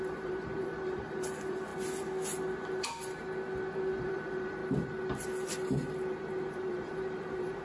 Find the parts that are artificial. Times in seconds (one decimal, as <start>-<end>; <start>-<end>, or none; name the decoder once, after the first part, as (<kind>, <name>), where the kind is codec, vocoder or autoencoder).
0.0-1.7 (vocoder, BigVGAN v2); 4.0-4.6; 6.5-7.6